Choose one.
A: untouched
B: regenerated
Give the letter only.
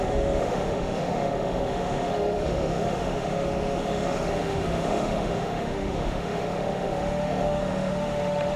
B